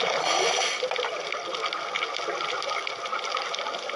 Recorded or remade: recorded